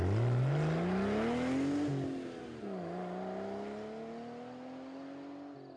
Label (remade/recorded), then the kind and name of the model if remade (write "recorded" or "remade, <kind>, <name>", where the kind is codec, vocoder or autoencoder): recorded